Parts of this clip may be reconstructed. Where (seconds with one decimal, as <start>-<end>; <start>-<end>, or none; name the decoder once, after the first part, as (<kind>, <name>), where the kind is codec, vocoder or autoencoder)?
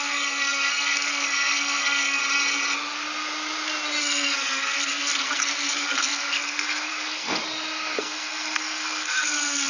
0.0-2.2 (codec, SNAC); 4.0-7.4; 8.0-9.7